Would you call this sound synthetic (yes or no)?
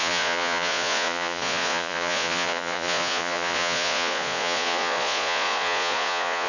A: yes